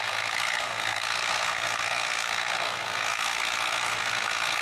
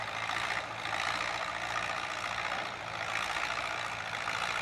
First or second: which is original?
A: second